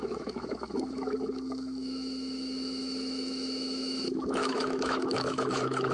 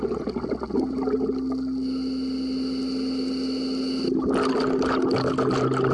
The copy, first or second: first